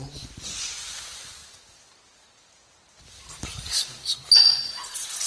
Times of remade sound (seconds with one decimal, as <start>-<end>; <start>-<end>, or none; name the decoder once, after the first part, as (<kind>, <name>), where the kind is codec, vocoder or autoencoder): 0.0-1.4 (vocoder, Vocos); 4.6-5.3